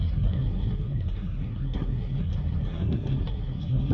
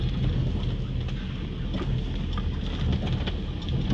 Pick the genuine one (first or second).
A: second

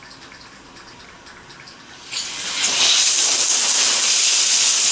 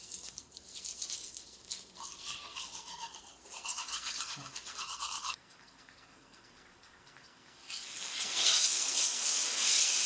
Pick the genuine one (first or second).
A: first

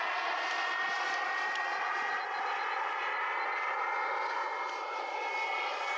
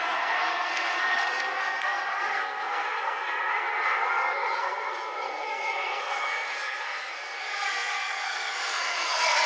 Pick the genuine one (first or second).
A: first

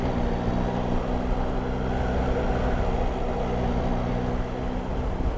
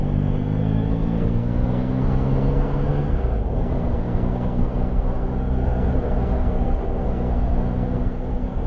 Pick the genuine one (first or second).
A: first